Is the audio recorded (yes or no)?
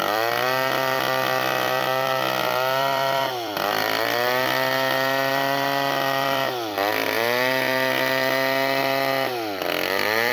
no